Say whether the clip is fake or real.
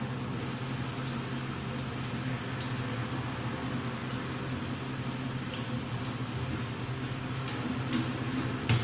real